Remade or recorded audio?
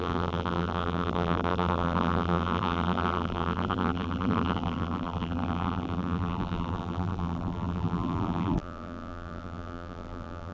remade